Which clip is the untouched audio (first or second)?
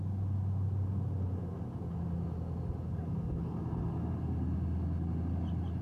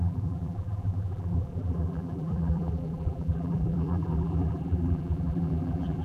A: first